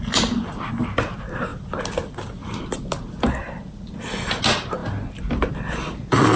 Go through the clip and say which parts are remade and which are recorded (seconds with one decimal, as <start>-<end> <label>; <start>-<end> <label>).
0.0-6.4 recorded